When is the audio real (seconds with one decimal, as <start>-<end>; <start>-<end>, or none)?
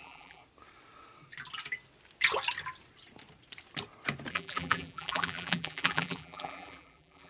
0.4-4.3